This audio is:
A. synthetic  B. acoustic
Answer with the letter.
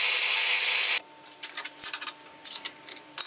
B